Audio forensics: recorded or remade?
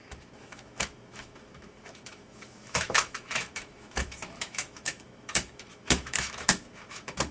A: remade